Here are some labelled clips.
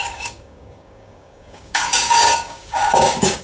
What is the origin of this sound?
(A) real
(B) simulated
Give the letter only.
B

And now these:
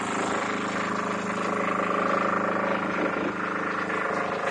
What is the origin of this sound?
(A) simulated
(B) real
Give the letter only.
B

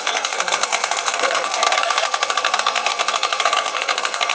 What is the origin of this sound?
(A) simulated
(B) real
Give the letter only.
A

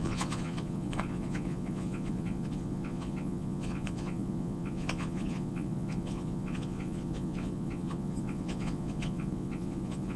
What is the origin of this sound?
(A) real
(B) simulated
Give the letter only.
B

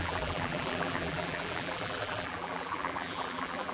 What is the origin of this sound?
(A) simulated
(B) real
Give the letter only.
A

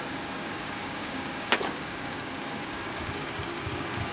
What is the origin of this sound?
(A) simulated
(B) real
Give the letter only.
A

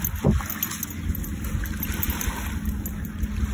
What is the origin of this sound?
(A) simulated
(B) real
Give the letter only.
B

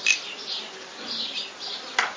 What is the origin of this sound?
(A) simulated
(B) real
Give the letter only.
B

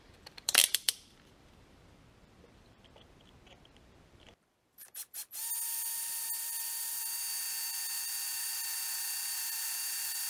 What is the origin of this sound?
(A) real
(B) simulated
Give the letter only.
B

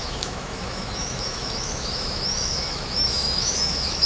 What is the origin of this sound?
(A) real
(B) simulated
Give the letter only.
B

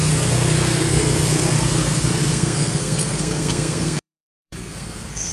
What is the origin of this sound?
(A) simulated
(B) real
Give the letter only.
A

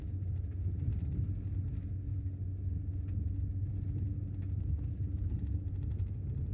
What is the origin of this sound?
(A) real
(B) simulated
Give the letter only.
A